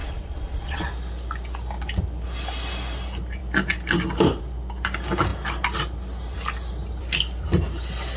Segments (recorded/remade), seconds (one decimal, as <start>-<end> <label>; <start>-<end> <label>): 0.0-0.9 remade; 0.9-8.2 recorded